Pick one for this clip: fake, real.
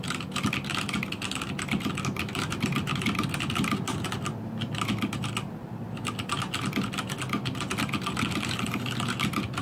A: real